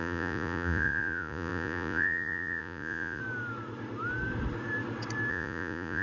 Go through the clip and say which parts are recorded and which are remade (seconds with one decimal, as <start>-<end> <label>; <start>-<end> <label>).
0.0-3.2 remade; 3.2-5.3 recorded; 5.3-6.0 remade